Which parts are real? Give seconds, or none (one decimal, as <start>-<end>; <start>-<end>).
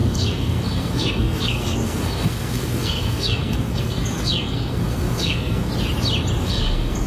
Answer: 5.7-6.4